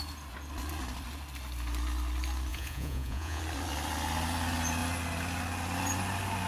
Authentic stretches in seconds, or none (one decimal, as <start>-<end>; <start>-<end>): 0.0-2.5; 3.4-6.5